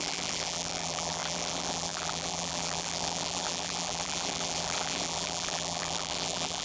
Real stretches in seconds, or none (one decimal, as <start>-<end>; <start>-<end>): none

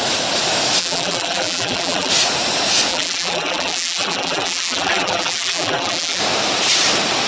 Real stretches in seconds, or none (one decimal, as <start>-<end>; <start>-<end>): 0.0-0.8; 2.1-2.9; 6.2-7.3

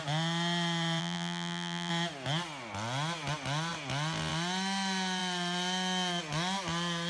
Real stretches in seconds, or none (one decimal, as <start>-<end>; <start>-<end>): 0.0-1.0; 1.9-7.1

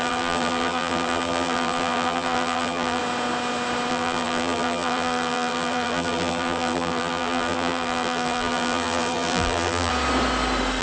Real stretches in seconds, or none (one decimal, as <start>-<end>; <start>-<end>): 3.0-3.9; 9.9-10.8

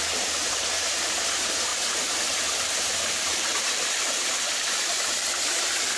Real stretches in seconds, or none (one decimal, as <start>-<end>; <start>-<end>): 0.0-1.7; 5.3-6.0

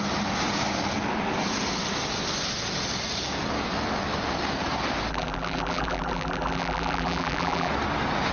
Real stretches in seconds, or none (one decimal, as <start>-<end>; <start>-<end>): 0.0-5.1; 7.7-8.3